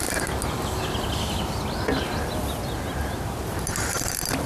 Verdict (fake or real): real